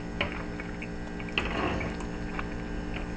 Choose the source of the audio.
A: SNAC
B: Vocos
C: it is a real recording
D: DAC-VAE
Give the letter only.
C